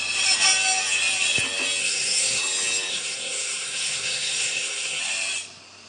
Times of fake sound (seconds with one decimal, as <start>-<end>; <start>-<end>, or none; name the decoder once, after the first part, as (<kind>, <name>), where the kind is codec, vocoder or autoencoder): 1.8-2.4 (codec, SNAC); 2.9-5.0